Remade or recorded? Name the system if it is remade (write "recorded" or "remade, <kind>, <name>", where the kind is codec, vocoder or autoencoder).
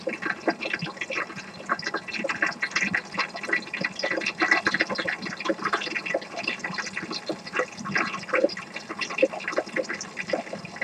recorded